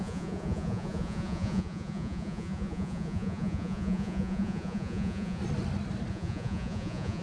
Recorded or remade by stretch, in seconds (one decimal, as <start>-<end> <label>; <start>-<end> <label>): 0.0-5.4 remade; 5.4-6.1 recorded; 6.1-7.2 remade